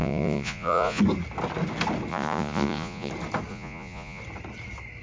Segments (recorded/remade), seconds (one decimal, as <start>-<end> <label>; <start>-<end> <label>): 0.0-1.0 remade; 1.0-2.1 recorded; 2.1-3.1 remade; 3.1-3.5 recorded; 3.5-4.2 remade; 4.2-5.0 recorded